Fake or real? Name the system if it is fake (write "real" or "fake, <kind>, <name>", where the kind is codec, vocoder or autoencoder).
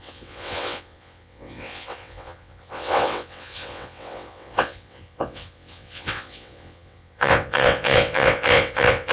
fake, vocoder, WaveNeXt